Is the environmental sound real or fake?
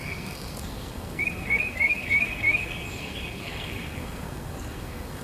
fake